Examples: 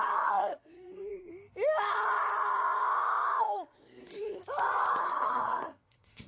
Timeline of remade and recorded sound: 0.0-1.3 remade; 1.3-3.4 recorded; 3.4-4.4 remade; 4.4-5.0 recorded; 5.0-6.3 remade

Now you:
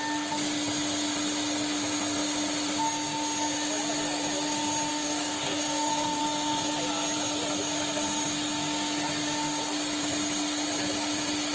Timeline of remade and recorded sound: 0.0-4.9 recorded; 4.9-6.2 remade; 6.2-11.5 recorded

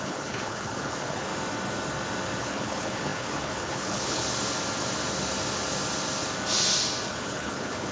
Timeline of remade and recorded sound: 0.0-1.3 remade; 1.3-2.4 recorded; 2.4-4.2 remade; 4.2-7.1 recorded; 7.1-7.9 remade

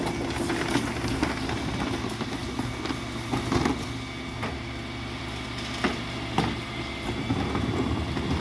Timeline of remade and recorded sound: 0.0-8.4 recorded

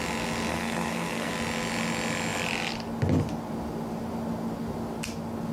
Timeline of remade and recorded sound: 0.0-0.5 recorded; 0.5-1.3 remade; 1.3-5.5 recorded